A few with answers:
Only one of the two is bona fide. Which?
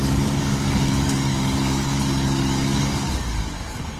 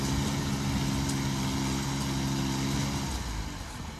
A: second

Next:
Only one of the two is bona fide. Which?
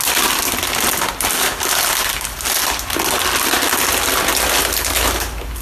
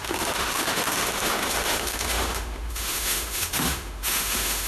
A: first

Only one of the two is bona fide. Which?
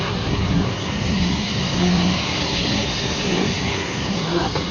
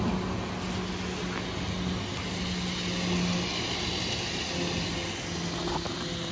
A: second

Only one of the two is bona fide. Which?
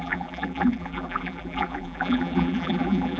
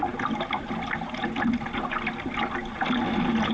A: second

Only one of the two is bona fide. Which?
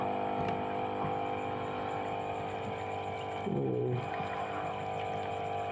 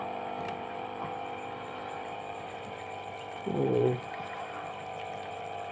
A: first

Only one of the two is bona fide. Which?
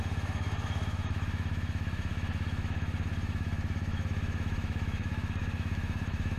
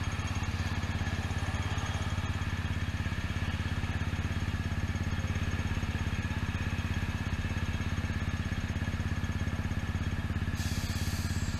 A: second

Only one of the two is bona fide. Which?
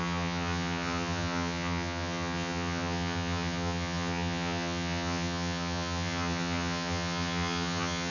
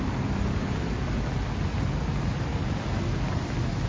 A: second